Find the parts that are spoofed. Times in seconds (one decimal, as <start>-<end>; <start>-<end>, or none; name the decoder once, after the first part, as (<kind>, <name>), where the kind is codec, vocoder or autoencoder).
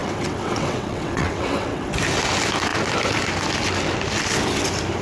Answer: 0.0-1.9 (vocoder, WaveNeXt)